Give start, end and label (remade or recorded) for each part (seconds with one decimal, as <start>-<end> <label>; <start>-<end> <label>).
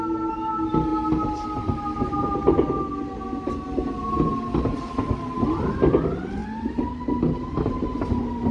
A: 0.0-8.5 recorded